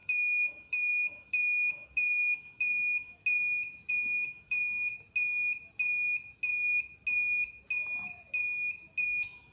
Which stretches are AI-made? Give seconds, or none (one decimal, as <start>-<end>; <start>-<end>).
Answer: 0.0-3.2; 3.9-4.9; 9.0-9.5